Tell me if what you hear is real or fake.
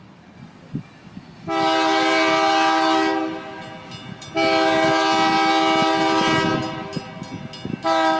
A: real